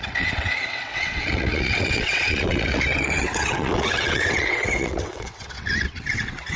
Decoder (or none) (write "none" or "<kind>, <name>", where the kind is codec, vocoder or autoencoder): vocoder, WaveNeXt